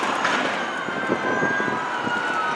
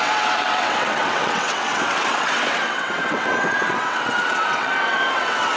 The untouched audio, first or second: first